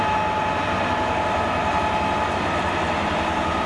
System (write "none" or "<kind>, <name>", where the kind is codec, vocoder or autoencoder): none